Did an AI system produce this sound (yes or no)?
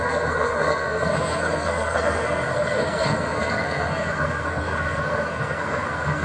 yes